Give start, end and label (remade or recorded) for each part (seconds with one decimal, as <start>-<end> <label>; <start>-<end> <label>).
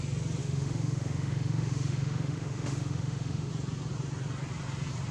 0.0-0.4 recorded; 0.4-3.5 remade; 3.5-5.1 recorded